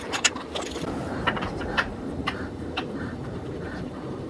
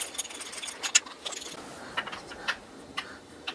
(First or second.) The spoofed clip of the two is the first